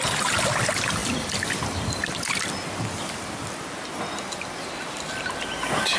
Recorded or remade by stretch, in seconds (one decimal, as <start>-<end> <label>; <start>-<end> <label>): 0.0-6.0 recorded